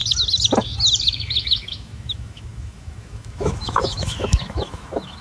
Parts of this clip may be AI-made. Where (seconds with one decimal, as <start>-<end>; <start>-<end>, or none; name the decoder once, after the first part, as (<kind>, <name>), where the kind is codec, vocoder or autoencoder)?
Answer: 1.1-5.2 (autoencoder, DAC-VAE)